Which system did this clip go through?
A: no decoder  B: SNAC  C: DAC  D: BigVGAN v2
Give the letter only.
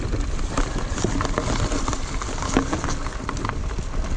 A